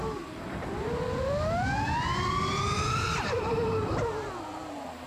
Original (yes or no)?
yes